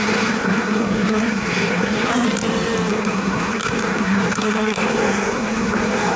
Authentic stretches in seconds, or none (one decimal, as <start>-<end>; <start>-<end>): 2.1-2.9